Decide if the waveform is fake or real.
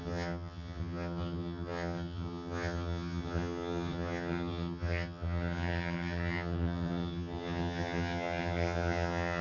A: fake